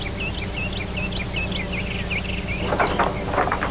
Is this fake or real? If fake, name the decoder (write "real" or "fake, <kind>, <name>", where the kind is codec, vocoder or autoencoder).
real